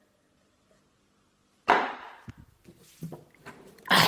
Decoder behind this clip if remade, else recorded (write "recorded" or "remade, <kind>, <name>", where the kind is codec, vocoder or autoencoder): remade, vocoder, BigVGAN v2